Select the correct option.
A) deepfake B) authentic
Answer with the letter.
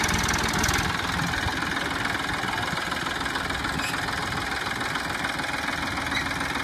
B